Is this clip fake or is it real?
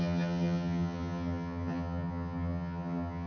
fake